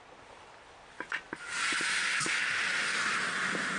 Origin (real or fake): real